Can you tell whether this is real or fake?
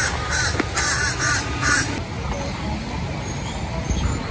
real